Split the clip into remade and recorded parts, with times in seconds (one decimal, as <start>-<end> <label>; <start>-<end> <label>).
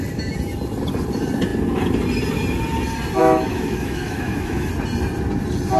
0.0-3.2 recorded; 3.2-4.7 remade; 4.7-5.8 recorded